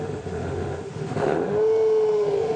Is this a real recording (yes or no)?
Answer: no